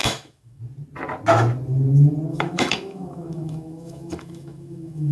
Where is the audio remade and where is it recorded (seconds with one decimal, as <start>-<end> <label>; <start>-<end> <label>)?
0.0-0.6 remade; 0.6-2.3 recorded; 2.3-5.1 remade

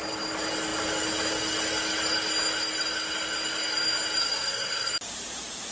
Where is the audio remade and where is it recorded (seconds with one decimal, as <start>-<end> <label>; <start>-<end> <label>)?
0.0-4.2 recorded; 4.2-4.9 remade; 4.9-5.7 recorded

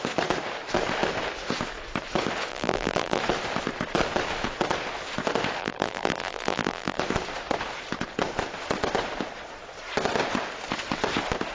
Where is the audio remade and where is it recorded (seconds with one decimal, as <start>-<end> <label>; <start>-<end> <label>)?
0.0-2.5 recorded; 2.5-3.2 remade; 3.2-5.6 recorded; 5.6-7.0 remade; 7.0-11.5 recorded

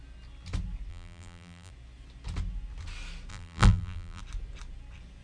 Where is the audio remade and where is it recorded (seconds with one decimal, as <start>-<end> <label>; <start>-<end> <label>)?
0.0-0.9 recorded; 0.9-1.7 remade; 1.7-3.3 recorded; 3.3-4.2 remade; 4.2-5.2 recorded

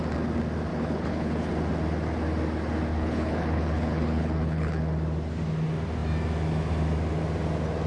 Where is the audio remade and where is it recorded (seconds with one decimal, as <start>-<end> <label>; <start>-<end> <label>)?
0.0-0.7 recorded; 0.7-1.5 remade; 1.5-2.9 recorded; 2.9-4.8 remade; 4.8-7.9 recorded

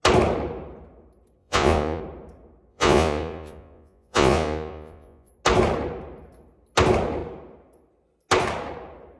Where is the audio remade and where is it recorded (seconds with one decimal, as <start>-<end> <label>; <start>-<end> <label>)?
0.0-1.4 recorded; 1.4-2.0 remade; 2.0-2.7 recorded; 2.7-5.3 remade; 5.3-9.2 recorded

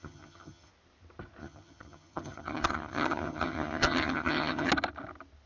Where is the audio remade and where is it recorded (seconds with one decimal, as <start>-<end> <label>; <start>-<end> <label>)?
0.0-0.7 remade; 0.7-1.4 recorded; 1.4-4.7 remade; 4.7-5.5 recorded

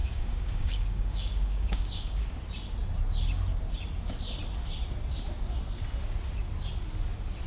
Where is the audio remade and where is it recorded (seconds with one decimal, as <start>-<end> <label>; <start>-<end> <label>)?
0.0-2.2 remade; 2.2-7.5 recorded